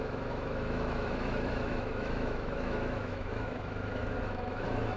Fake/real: fake